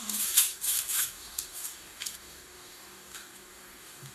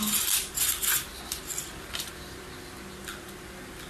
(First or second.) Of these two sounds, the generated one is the first